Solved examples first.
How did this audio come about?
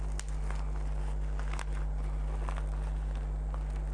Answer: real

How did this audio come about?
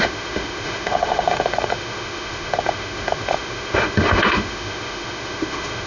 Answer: fake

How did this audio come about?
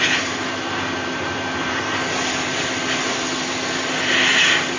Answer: real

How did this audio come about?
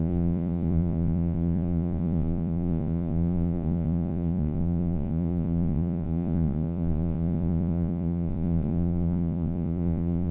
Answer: fake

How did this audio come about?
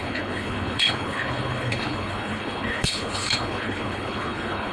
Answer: fake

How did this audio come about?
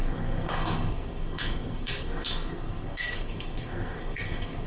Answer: fake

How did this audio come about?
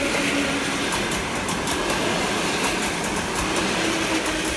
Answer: real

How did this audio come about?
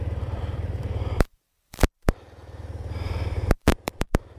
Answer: fake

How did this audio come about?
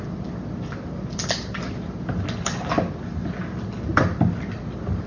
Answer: real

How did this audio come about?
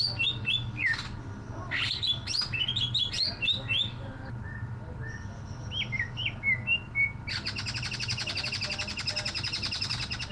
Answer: real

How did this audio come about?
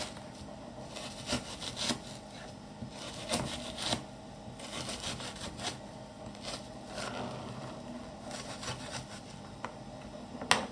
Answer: real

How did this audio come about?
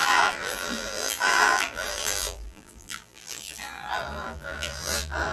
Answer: fake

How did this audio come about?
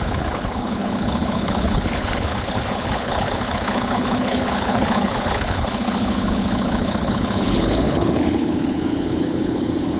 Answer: fake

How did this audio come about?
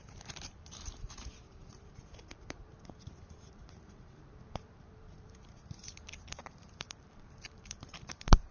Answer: fake